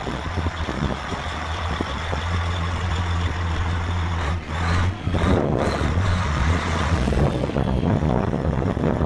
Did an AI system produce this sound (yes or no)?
yes